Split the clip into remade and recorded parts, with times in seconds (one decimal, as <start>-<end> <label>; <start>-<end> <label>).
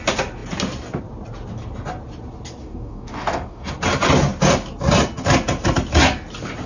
0.0-2.6 recorded; 2.6-3.7 remade; 3.7-6.7 recorded